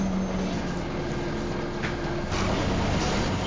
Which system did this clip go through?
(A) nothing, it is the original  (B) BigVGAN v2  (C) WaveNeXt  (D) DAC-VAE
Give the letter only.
A